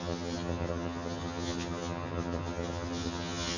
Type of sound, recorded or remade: remade